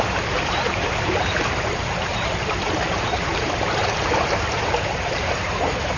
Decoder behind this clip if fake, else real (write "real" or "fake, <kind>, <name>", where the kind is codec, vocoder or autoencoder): fake, vocoder, BigVGAN v2